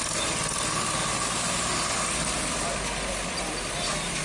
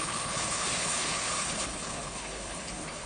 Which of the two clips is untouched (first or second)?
first